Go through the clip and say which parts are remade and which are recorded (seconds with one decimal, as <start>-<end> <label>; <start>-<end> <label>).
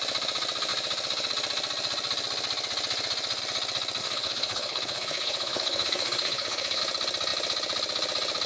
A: 0.0-4.0 recorded; 4.0-6.8 remade; 6.8-8.5 recorded